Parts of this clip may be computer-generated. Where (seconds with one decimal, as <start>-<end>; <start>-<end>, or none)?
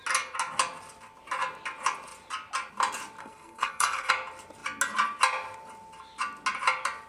3.2-4.1